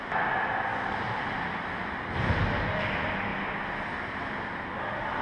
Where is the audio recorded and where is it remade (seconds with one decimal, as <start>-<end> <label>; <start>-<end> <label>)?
0.0-5.2 recorded